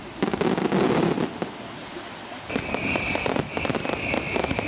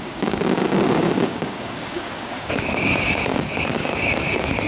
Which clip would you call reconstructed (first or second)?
second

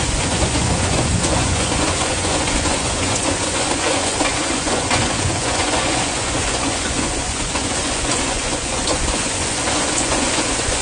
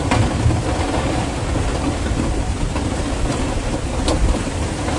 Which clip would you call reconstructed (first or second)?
first